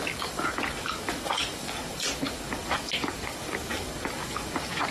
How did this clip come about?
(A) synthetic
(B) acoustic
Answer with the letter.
A